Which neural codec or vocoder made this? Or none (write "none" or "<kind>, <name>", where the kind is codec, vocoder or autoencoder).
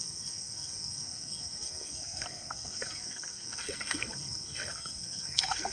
codec, SNAC